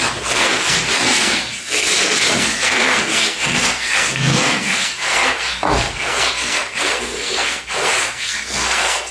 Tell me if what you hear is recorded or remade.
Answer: remade